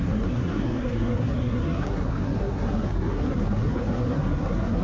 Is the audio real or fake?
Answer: fake